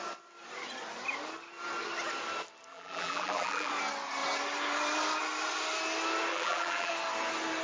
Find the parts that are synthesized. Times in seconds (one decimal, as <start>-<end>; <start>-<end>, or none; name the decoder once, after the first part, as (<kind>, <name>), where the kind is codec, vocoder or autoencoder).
2.7-3.7 (vocoder, BigVGAN v2); 6.3-6.9